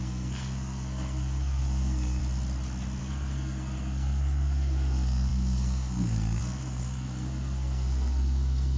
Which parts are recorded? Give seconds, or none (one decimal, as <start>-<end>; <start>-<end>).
2.2-3.0